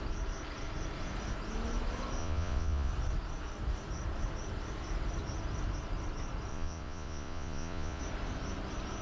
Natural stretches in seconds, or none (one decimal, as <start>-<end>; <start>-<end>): 0.0-2.2; 2.9-6.5; 8.0-9.0